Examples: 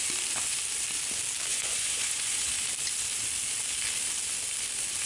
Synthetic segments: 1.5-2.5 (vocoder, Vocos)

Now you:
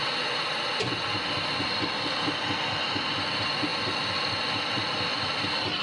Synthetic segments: none